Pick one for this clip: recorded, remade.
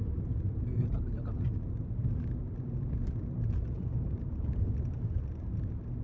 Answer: recorded